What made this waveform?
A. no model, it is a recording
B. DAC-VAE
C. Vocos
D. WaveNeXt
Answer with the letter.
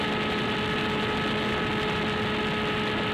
A